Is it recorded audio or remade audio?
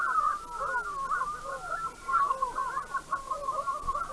recorded